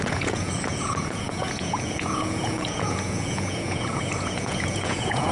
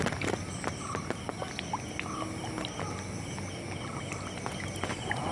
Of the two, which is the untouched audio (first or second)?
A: second